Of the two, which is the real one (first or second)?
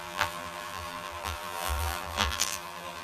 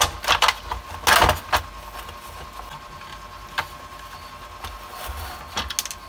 second